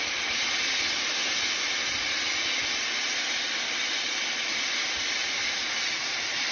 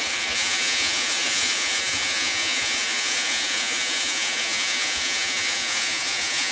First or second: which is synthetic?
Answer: second